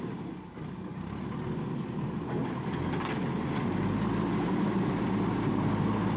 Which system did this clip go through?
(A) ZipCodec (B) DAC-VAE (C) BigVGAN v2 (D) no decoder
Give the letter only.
D